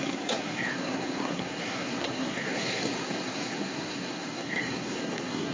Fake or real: fake